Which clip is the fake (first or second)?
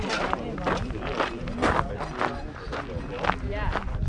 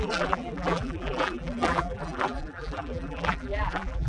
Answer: second